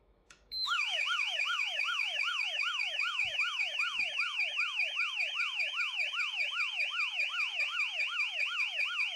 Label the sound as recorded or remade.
remade